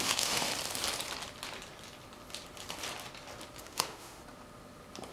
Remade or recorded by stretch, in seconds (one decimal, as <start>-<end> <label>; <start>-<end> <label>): 0.0-0.5 remade; 0.5-3.6 recorded; 3.6-4.2 remade; 4.2-5.1 recorded